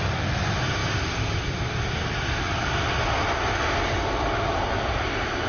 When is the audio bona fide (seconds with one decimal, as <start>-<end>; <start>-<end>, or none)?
0.0-5.5